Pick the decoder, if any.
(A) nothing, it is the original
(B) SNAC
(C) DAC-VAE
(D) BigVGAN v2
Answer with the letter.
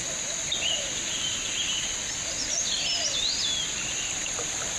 A